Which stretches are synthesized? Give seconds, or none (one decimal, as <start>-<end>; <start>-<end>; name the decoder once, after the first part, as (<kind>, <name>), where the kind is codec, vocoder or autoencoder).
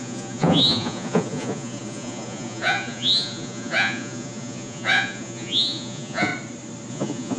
0.0-6.3 (vocoder, Vocos); 6.9-7.4